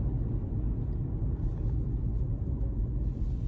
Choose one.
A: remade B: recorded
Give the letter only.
B